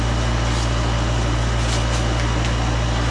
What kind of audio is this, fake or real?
real